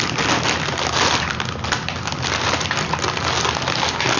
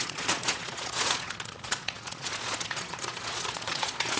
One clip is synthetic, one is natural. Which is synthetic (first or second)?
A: second